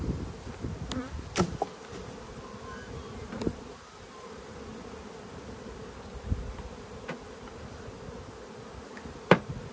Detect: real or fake real